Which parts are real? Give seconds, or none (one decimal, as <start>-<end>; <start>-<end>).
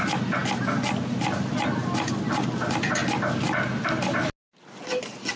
0.0-5.4